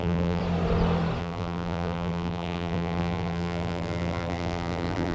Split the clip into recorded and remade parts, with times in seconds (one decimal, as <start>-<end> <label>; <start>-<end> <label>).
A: 0.0-0.4 remade; 0.4-1.2 recorded; 1.2-5.1 remade